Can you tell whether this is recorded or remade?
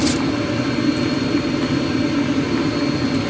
recorded